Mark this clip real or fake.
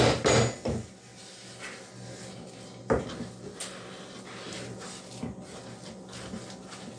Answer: real